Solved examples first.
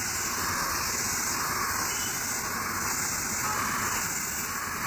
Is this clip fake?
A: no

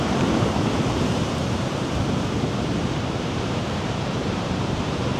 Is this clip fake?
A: yes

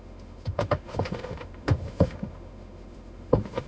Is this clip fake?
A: yes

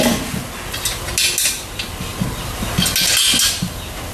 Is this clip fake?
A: no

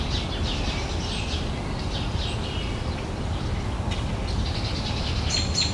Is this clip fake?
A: no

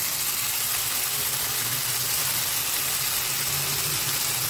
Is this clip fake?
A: no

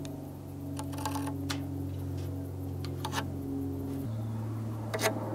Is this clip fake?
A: no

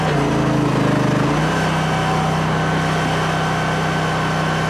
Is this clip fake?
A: no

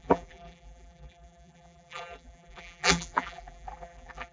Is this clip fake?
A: yes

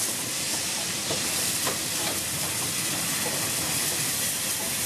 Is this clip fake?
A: no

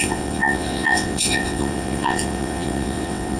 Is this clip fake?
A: yes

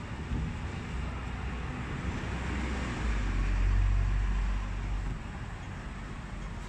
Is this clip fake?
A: no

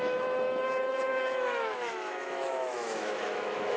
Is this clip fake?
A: yes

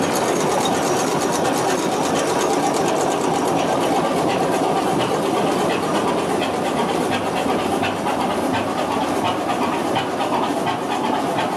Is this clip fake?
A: no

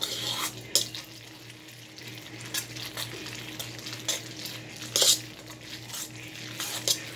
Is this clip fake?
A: no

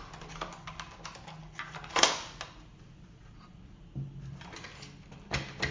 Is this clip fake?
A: no